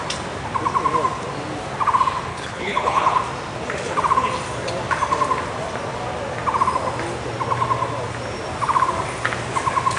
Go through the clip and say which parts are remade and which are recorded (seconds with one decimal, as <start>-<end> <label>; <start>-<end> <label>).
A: 0.0-2.3 recorded; 2.3-3.2 remade; 3.2-10.0 recorded